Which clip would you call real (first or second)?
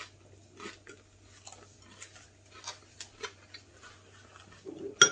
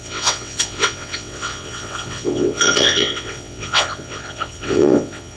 first